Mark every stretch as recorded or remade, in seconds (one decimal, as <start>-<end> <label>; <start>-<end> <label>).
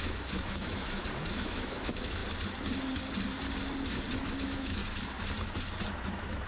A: 0.0-2.2 remade; 2.2-4.2 recorded; 4.2-4.8 remade; 4.8-6.1 recorded; 6.1-6.5 remade